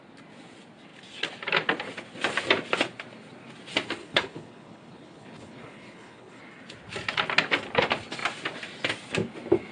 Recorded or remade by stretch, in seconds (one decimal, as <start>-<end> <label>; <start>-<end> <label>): 0.0-4.0 recorded; 4.0-6.4 remade; 6.4-9.7 recorded